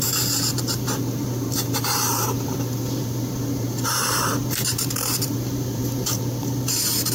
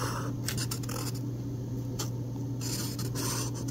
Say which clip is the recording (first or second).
second